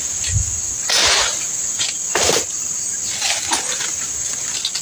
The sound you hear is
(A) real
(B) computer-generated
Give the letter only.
A